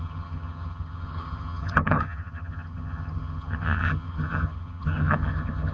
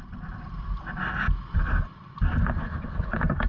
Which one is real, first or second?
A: second